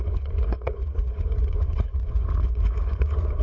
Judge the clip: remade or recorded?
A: remade